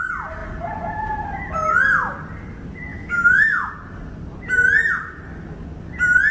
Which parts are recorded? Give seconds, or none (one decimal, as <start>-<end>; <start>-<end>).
0.0-2.9; 3.7-6.3

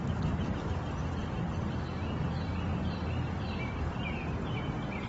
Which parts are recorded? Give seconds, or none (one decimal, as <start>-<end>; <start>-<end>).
0.0-1.2; 1.8-2.7; 3.4-5.1

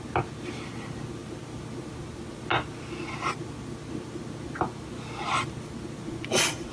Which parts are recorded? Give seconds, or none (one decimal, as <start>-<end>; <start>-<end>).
0.0-6.7

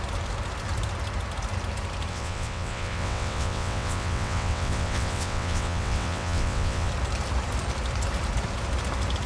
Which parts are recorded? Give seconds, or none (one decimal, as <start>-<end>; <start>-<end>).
0.0-2.1; 6.9-9.3

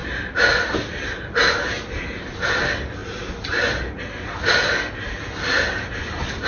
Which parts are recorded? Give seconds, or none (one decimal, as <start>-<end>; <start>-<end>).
0.0-6.5

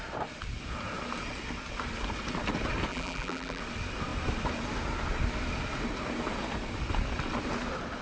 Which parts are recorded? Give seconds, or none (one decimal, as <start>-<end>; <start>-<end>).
0.0-2.9; 3.6-8.0

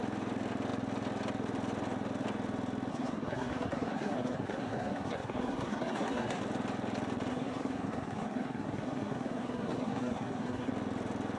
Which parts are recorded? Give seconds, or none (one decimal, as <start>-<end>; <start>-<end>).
0.0-2.9; 6.4-7.3; 10.7-11.4

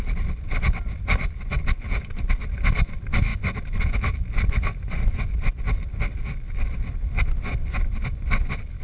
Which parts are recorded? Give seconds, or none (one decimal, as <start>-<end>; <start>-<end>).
0.0-8.8